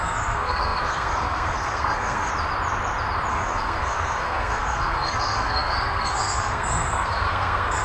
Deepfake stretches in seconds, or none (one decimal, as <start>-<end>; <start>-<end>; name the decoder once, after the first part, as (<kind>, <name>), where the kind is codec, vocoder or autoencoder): 0.0-2.3 (codec, SNAC); 3.3-7.8